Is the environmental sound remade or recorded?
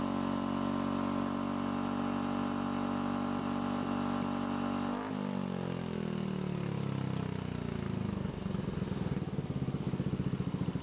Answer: recorded